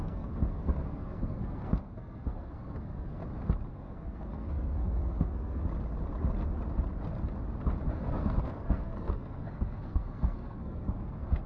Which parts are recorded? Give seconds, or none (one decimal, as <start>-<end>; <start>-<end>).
3.2-3.7; 5.6-7.9